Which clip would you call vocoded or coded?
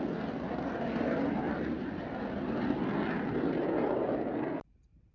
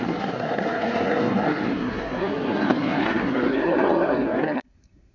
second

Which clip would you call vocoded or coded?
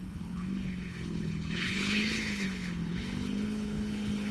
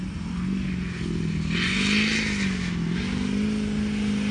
first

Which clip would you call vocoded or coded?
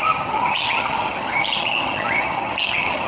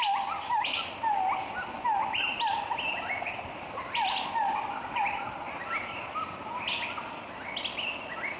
first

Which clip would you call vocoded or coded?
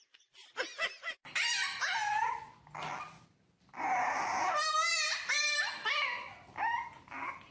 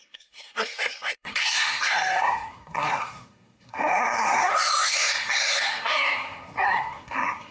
second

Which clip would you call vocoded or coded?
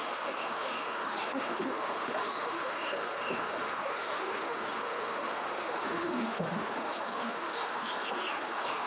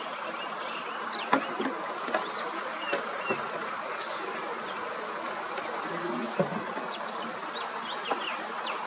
first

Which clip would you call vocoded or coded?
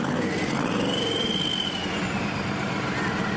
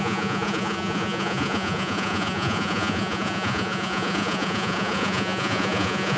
second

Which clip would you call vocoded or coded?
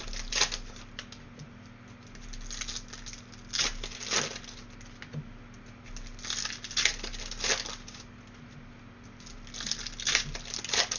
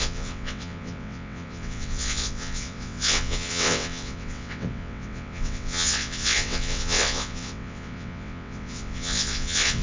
second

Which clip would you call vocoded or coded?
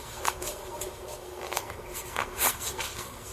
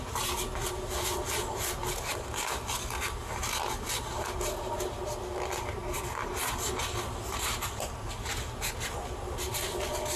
first